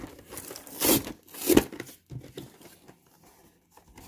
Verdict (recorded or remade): recorded